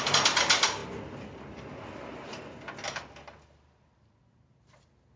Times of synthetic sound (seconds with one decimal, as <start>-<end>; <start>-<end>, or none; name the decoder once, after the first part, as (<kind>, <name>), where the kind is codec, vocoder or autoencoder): none